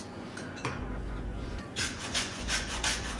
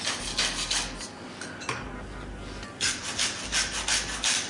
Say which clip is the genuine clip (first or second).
second